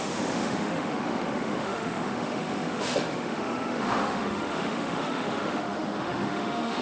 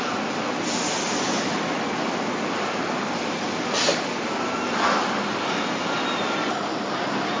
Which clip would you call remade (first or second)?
first